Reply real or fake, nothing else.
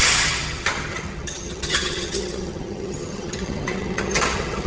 fake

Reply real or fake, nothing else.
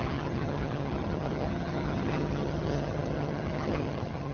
fake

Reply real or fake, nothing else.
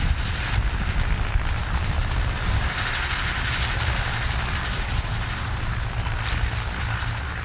real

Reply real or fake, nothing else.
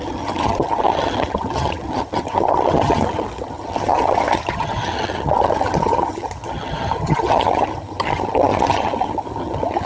fake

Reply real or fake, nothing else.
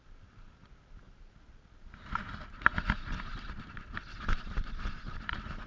real